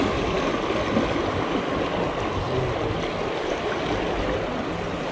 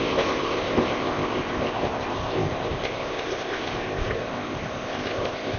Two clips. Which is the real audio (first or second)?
first